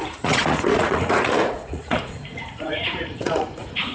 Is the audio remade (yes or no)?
yes